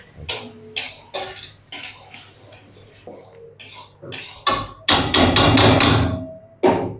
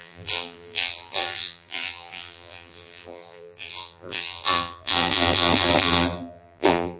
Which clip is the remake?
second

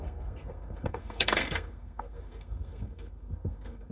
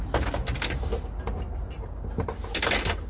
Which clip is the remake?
first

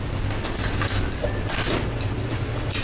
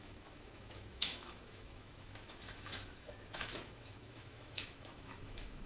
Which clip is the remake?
second